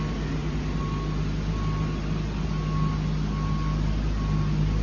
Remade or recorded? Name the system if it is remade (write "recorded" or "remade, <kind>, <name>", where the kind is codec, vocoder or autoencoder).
recorded